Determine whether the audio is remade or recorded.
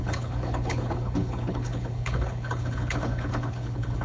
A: remade